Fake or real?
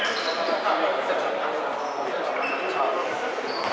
real